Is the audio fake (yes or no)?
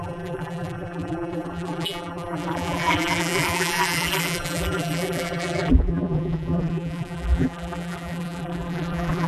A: yes